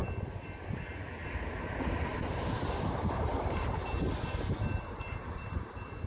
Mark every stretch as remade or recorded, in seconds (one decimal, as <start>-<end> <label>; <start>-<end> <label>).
0.0-2.1 recorded; 2.1-3.7 remade; 3.7-6.1 recorded